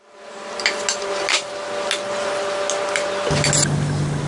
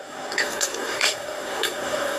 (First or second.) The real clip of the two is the first